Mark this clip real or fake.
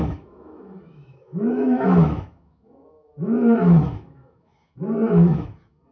fake